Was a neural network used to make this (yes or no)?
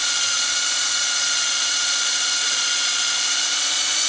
yes